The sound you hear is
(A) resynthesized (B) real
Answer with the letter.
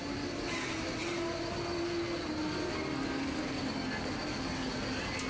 B